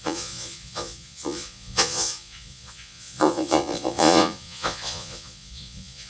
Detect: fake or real fake